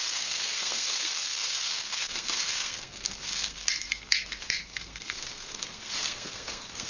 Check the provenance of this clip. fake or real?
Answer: fake